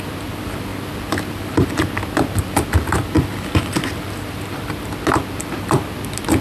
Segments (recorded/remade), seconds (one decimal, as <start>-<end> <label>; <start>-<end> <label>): 0.0-6.4 recorded